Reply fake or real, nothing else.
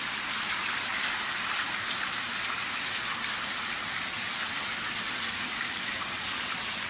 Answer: real